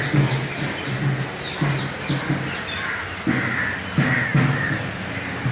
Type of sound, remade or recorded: recorded